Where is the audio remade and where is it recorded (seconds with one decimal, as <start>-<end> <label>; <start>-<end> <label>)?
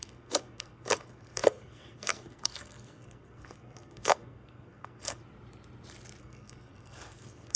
0.0-5.2 remade; 5.2-6.2 recorded; 6.2-7.6 remade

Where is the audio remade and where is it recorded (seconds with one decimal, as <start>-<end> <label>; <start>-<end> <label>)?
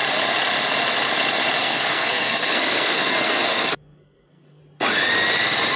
0.0-1.6 recorded; 1.6-4.6 remade; 4.6-5.8 recorded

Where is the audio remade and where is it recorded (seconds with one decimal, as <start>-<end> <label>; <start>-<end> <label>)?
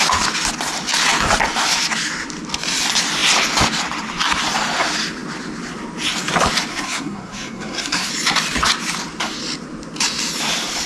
0.0-6.7 recorded; 6.7-8.1 remade; 8.1-10.9 recorded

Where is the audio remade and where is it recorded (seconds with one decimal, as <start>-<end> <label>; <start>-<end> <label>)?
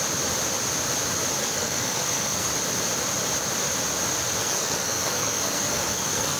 0.0-1.4 recorded; 1.4-2.5 remade; 2.5-4.4 recorded; 4.4-6.4 remade